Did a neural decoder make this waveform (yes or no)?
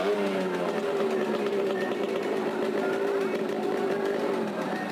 no